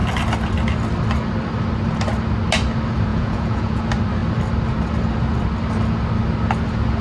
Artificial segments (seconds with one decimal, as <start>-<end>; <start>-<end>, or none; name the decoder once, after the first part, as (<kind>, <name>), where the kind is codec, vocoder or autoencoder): 3.1-3.8 (vocoder, Vocos)